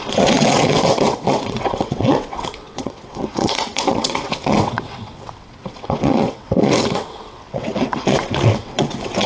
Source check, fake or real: fake